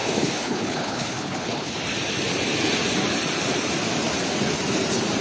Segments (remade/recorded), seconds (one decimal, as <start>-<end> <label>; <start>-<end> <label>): 0.0-1.7 remade; 1.7-5.2 recorded

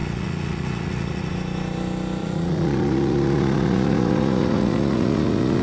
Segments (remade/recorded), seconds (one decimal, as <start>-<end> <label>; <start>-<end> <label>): 0.0-1.3 remade; 1.3-2.2 recorded; 2.2-5.6 remade

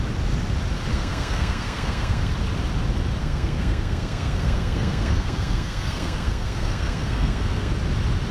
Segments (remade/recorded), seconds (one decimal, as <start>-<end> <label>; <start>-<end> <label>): 0.0-0.9 recorded; 0.9-2.3 remade; 2.3-3.2 recorded; 3.2-7.7 remade; 7.7-8.3 recorded